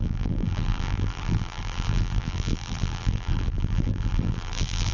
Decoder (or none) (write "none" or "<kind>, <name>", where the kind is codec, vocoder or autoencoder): vocoder, BigVGAN v2